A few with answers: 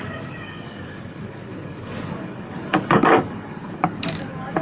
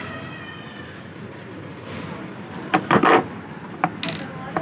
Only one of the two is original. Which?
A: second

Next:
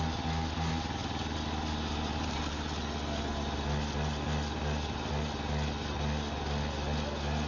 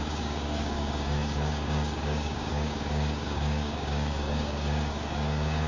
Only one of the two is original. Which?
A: first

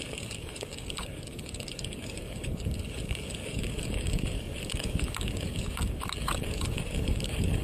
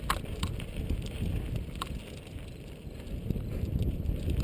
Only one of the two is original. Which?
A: second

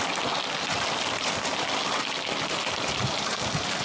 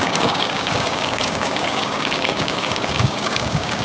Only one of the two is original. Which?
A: first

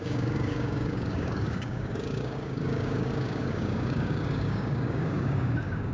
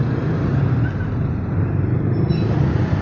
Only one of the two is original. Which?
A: second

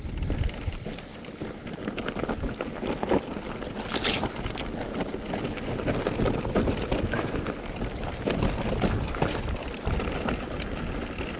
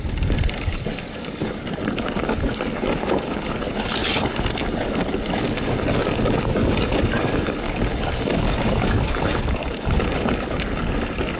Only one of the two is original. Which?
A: first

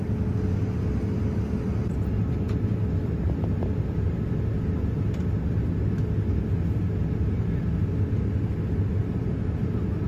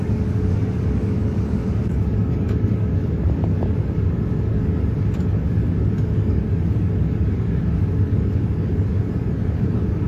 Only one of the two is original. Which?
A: first